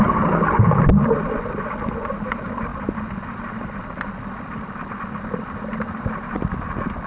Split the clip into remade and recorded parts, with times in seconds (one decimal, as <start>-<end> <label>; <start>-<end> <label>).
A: 0.0-7.1 recorded